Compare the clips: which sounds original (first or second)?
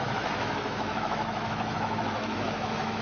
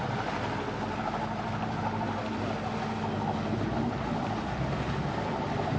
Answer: second